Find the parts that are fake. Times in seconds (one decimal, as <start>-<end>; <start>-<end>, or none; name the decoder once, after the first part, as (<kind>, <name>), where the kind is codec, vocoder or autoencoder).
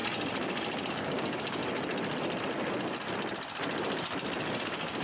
0.9-1.6 (codec, DAC); 4.6-5.0